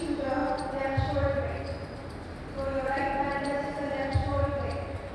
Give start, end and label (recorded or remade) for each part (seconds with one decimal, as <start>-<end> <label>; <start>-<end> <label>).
0.0-4.2 recorded; 4.2-5.1 remade